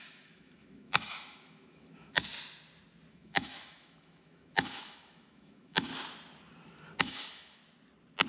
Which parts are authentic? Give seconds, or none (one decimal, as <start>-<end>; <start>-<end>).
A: 2.3-3.1; 5.9-7.0; 7.6-8.3